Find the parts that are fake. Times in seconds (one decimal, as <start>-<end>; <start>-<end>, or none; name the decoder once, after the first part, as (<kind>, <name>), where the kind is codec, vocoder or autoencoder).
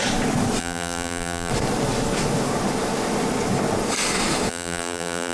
0.6-1.5 (vocoder, BigVGAN v2); 4.5-5.3